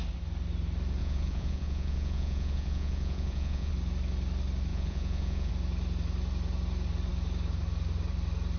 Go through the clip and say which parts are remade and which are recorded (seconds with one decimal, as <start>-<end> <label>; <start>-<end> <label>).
0.0-1.0 recorded; 1.0-3.7 remade; 3.7-4.7 recorded; 4.7-5.5 remade; 5.5-8.6 recorded